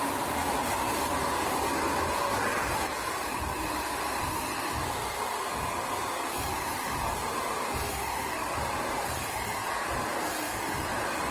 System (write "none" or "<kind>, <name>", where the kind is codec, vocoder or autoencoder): vocoder, BigVGAN v2